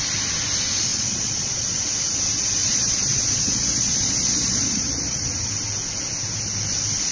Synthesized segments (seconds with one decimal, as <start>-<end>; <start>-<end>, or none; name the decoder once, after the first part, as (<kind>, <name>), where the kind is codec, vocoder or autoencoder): 0.9-1.8 (vocoder, Vocos); 2.6-5.5